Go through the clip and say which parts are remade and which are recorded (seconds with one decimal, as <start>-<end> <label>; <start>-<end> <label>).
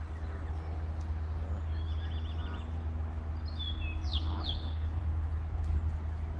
0.0-4.1 recorded; 4.1-5.0 remade; 5.0-6.4 recorded